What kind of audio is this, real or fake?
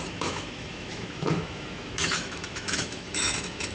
fake